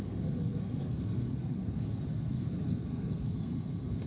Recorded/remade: remade